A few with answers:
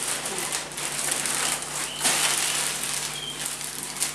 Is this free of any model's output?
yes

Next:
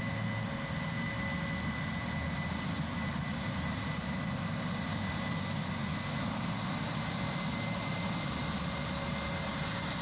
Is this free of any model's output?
yes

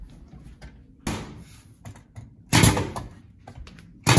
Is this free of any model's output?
yes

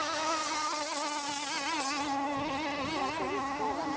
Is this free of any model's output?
yes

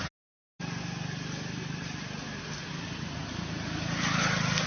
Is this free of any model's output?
yes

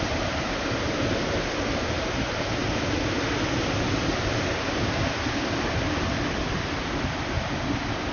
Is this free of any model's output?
yes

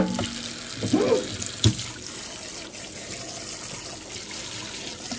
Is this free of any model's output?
yes